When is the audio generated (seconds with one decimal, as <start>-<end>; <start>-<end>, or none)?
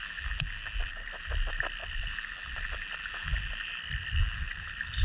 none